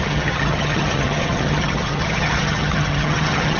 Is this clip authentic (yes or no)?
no